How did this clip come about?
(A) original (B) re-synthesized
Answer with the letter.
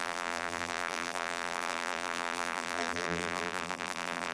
B